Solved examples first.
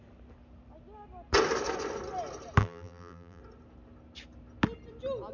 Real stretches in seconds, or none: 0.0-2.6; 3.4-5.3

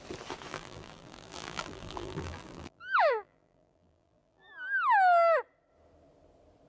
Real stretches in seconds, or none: 0.0-0.5; 4.5-6.7

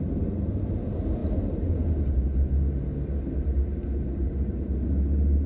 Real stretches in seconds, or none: 0.0-5.5

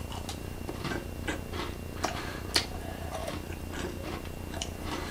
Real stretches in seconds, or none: 1.0-2.1; 3.2-4.6

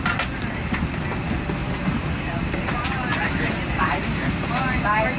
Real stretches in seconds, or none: 0.0-1.6; 4.5-5.2